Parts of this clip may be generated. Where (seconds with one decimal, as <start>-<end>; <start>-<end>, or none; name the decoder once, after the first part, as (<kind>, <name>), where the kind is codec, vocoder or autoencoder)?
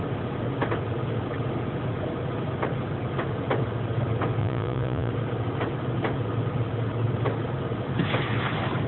4.4-5.1 (vocoder, Vocos)